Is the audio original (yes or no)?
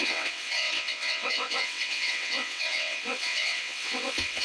no